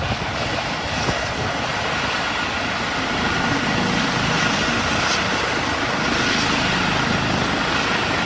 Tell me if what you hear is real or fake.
real